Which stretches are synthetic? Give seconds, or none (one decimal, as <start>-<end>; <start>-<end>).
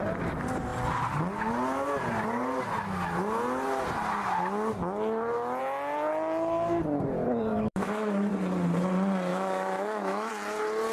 7.5-8.3; 9.3-10.3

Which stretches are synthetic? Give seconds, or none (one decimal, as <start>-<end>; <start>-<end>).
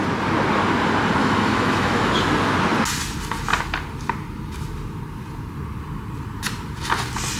1.2-2.1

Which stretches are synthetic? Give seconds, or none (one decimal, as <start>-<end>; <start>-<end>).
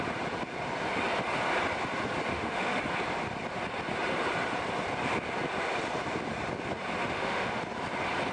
2.3-2.8; 7.0-7.6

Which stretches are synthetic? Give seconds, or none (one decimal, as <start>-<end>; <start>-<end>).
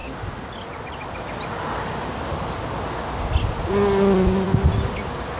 none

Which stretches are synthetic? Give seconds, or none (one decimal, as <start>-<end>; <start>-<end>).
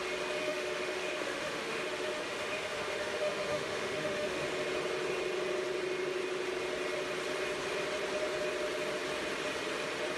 0.4-4.4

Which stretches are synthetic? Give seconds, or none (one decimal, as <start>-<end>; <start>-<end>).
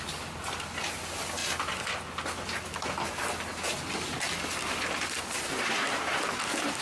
none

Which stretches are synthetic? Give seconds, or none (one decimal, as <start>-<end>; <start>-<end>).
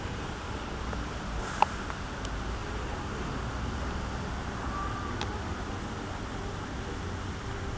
none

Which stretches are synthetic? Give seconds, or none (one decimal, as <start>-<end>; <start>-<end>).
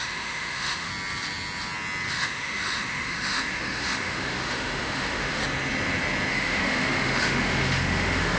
0.0-0.9; 2.1-5.4; 6.3-8.4